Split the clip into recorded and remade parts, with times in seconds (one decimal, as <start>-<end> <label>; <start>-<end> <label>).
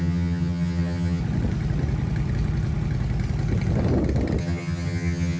0.0-1.2 remade; 1.2-4.4 recorded; 4.4-5.4 remade